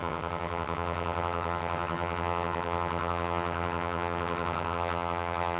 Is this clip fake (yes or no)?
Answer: yes